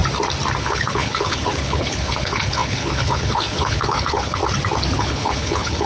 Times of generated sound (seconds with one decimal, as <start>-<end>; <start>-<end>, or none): 0.6-4.4; 5.0-5.9